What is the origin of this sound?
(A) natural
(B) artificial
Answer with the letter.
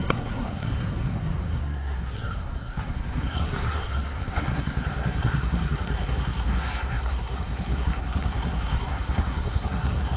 B